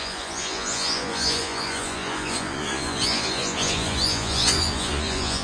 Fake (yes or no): yes